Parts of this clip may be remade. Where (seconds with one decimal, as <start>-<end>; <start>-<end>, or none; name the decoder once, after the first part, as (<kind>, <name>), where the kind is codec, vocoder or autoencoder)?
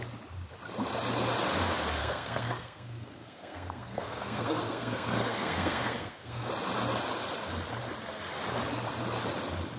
2.0-6.5 (codec, SNAC)